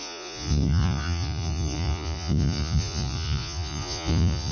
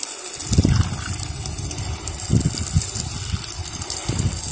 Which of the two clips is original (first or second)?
second